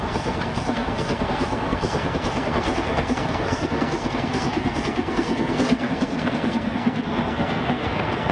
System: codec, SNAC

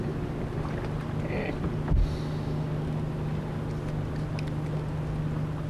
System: none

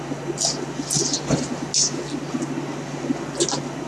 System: none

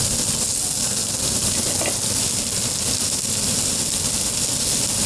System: none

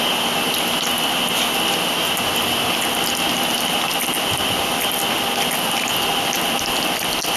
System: none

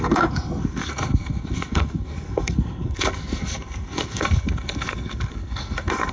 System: codec, SNAC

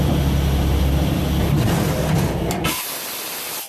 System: none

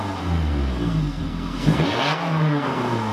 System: codec, SNAC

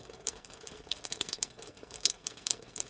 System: codec, SNAC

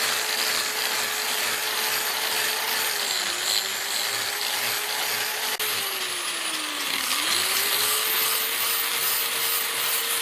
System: none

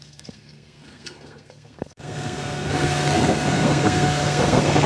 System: codec, SNAC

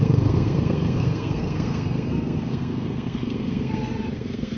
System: codec, SNAC